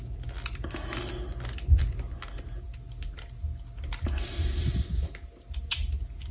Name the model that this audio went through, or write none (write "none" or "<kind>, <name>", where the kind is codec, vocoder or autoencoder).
none